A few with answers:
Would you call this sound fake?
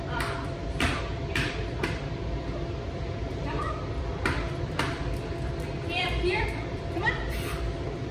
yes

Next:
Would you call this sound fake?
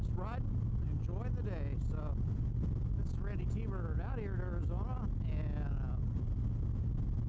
no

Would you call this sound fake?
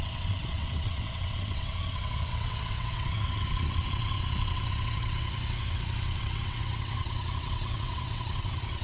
yes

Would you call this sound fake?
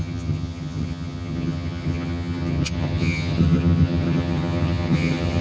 yes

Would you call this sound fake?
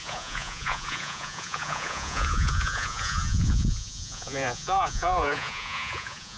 yes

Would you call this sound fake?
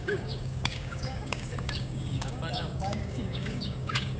yes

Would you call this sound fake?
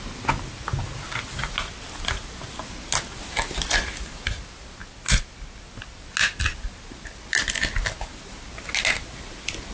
no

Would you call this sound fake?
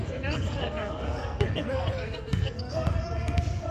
yes